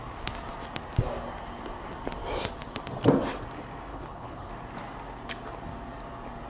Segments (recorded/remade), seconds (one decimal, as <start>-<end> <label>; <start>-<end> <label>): 0.0-3.9 recorded; 3.9-4.5 remade; 4.5-6.5 recorded